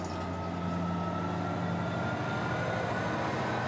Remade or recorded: recorded